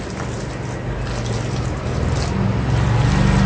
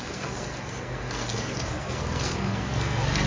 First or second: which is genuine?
first